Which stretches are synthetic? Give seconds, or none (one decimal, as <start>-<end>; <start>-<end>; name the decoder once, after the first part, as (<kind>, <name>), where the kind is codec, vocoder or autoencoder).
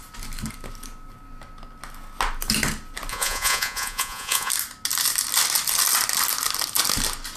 3.1-4.5 (vocoder, Vocos)